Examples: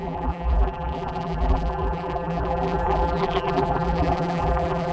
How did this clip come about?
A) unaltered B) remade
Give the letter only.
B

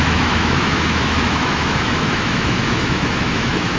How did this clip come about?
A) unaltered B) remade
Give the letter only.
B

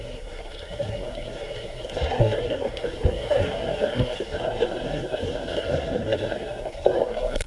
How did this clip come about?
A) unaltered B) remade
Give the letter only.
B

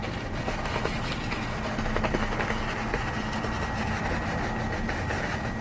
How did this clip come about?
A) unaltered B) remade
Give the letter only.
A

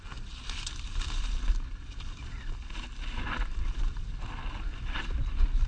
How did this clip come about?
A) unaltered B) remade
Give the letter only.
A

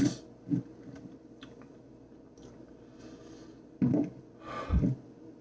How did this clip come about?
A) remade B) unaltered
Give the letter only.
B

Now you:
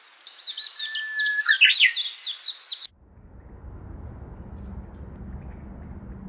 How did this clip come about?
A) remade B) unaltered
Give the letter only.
B